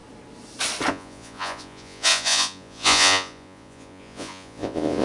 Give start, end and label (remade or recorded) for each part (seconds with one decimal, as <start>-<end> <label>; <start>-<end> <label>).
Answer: 0.0-0.9 recorded; 0.9-5.0 remade